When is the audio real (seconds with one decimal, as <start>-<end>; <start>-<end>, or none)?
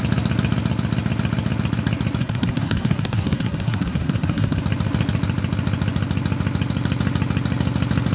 0.0-2.2; 4.6-8.1